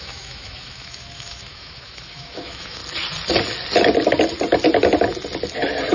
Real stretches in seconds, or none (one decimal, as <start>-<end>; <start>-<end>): 2.8-5.9